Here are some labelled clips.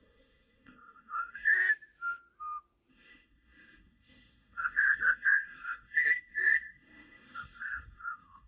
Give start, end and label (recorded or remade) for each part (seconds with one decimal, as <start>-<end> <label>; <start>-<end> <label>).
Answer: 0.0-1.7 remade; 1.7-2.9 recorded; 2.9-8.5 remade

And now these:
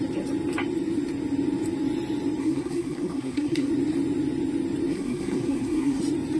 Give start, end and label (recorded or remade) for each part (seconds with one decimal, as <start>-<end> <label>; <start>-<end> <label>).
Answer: 0.0-2.4 recorded; 2.4-3.7 remade; 3.7-4.9 recorded; 4.9-6.0 remade; 6.0-6.4 recorded

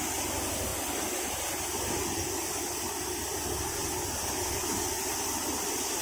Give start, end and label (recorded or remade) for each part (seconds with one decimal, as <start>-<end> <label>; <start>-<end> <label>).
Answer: 0.0-6.0 recorded

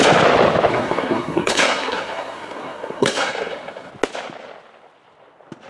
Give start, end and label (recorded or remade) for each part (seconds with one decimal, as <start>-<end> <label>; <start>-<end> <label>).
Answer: 0.0-0.7 recorded; 0.7-3.9 remade; 3.9-5.7 recorded